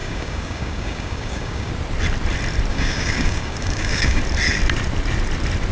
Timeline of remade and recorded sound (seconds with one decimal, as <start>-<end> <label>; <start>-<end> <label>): 0.0-1.7 remade; 1.7-2.7 recorded; 2.7-4.2 remade; 4.2-5.7 recorded